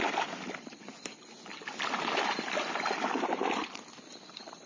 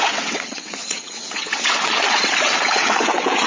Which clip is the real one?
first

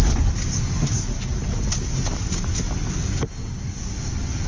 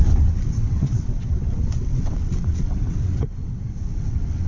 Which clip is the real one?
first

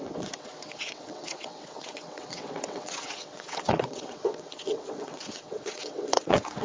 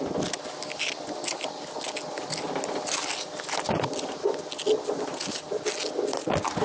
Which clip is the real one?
second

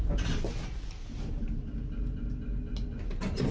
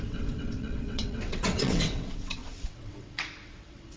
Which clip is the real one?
first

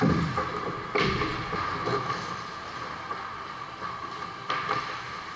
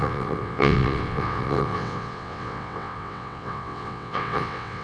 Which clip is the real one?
first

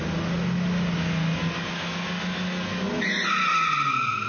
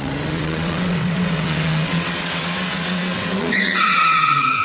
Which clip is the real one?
first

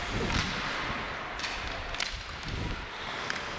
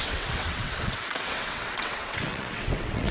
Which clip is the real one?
first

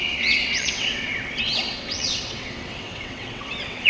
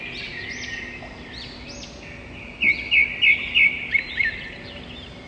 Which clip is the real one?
second